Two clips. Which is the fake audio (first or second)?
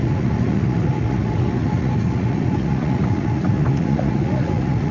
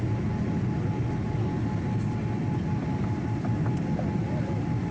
first